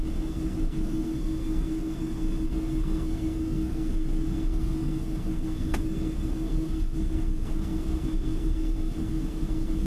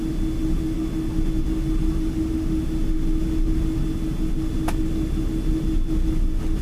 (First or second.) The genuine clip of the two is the second